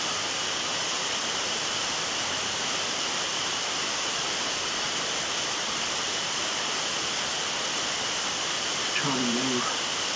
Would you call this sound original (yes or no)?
no